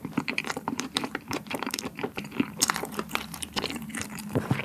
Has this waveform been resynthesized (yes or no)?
yes